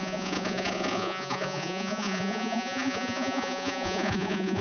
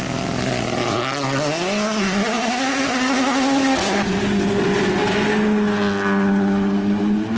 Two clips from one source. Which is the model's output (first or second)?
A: first